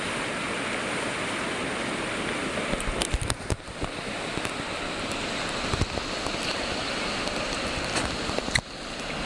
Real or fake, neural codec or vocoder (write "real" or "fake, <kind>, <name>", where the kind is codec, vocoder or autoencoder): real